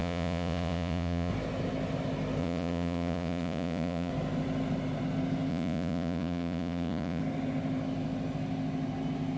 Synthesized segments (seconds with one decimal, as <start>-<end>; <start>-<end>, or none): 0.0-1.3; 2.4-4.1; 5.5-7.2